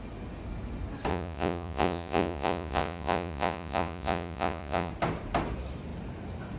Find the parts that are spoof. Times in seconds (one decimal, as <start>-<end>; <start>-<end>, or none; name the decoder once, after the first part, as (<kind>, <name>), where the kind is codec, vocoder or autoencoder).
1.1-4.9 (vocoder, Vocos)